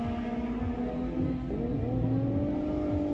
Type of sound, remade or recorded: recorded